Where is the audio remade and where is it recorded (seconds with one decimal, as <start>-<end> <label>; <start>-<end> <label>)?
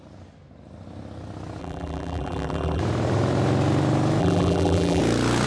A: 0.0-1.6 recorded; 1.6-2.8 remade; 2.8-4.2 recorded; 4.2-5.0 remade; 5.0-5.5 recorded